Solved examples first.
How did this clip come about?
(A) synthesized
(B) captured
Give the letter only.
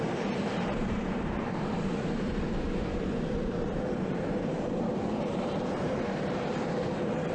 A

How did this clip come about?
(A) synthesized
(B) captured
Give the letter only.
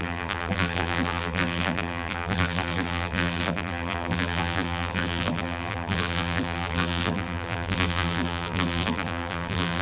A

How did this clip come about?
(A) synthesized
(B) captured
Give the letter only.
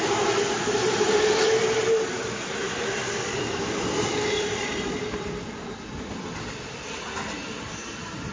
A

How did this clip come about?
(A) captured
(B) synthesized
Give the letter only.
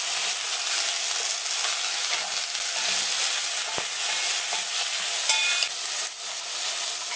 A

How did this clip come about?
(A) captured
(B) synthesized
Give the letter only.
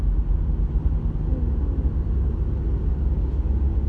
A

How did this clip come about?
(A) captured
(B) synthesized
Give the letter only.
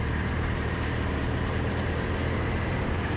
B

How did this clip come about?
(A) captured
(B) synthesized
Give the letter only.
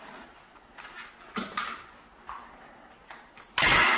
A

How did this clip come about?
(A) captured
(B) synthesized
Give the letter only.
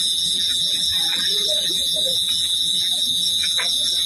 B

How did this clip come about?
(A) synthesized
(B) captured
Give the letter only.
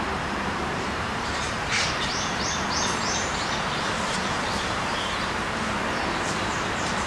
A